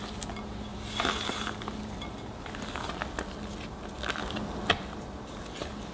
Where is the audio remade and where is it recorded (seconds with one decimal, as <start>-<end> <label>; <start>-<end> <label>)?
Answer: 0.0-5.9 recorded